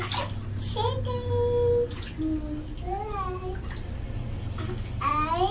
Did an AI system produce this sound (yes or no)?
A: no